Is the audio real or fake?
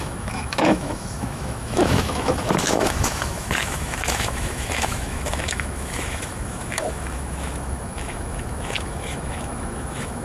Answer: fake